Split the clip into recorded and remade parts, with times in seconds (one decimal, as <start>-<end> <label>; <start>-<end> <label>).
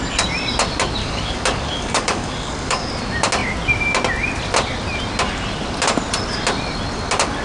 0.0-1.0 recorded; 1.0-2.9 remade; 2.9-7.4 recorded